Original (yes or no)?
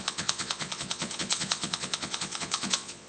no